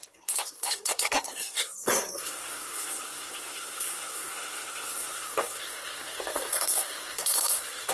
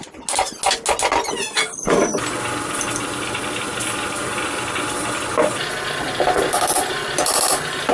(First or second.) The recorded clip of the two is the second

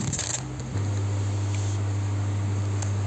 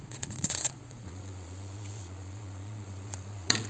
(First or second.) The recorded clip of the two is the first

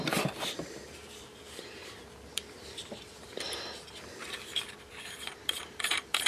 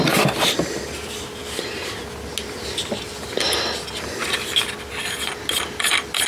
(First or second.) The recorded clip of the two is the second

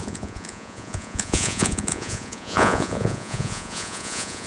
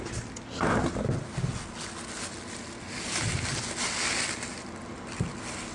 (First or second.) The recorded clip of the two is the second